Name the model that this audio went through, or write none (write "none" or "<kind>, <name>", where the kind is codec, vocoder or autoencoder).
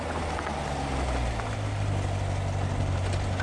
none